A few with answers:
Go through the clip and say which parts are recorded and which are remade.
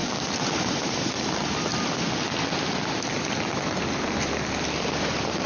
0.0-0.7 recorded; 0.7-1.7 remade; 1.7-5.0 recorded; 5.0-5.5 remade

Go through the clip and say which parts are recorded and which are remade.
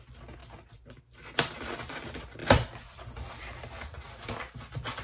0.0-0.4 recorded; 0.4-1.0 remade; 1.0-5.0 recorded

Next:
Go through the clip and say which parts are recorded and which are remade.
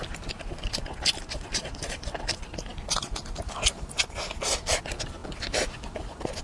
0.0-6.4 recorded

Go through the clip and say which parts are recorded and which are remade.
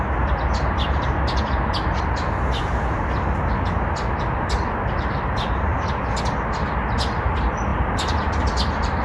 0.0-9.0 recorded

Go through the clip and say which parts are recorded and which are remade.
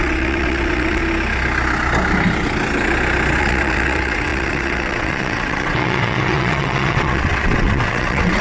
0.0-1.0 remade; 1.0-3.4 recorded; 3.4-8.4 remade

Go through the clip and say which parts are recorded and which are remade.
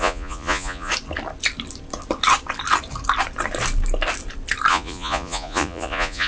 0.0-0.9 remade; 0.9-4.7 recorded; 4.7-6.3 remade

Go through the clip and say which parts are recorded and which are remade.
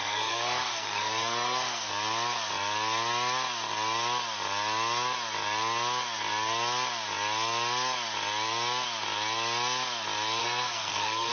0.0-1.9 remade; 1.9-10.4 recorded; 10.4-11.3 remade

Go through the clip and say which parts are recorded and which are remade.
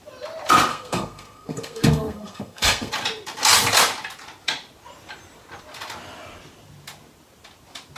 0.0-0.7 recorded; 0.7-2.9 remade; 2.9-8.0 recorded